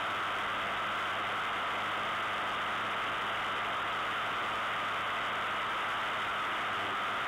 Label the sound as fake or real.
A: real